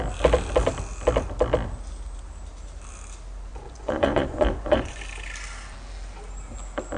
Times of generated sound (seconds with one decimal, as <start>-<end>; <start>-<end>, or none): 3.5-5.0